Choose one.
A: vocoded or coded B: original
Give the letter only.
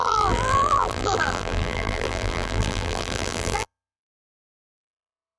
A